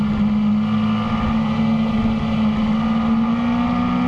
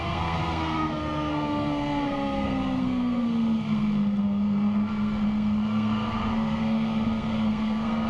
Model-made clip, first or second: second